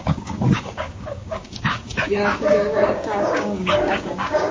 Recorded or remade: remade